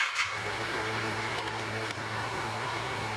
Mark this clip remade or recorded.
remade